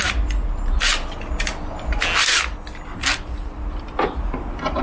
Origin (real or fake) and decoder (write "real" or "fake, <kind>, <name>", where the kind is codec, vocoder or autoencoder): real